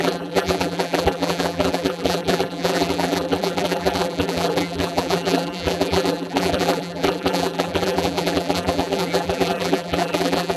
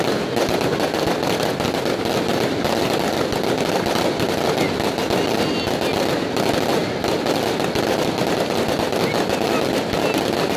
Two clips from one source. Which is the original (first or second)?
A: second